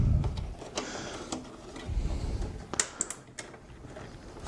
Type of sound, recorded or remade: recorded